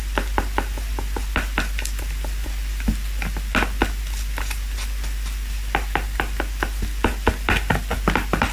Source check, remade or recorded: recorded